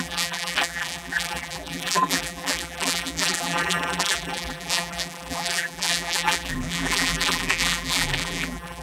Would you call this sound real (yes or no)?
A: no